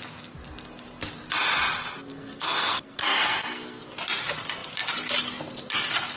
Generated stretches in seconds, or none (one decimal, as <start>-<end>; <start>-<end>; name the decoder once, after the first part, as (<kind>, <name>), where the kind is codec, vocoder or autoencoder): 2.1-3.8 (codec, SNAC)